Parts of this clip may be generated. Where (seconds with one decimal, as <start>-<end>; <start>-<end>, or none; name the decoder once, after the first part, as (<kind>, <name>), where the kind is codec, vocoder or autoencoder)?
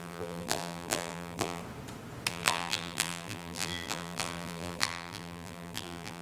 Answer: 0.0-1.6 (vocoder, BigVGAN v2); 2.3-6.2